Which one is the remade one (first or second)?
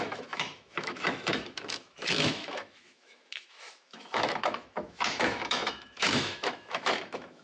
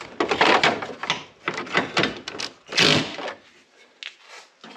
first